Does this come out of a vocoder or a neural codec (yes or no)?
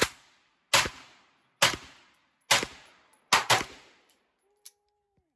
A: no